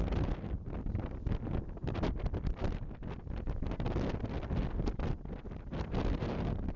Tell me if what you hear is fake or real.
real